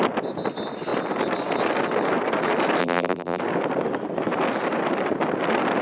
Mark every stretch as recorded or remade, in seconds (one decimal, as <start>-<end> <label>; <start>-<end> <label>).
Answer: 0.0-2.8 recorded; 2.8-3.4 remade; 3.4-5.8 recorded